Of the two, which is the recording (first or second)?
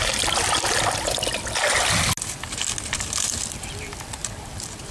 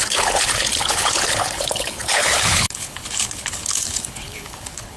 first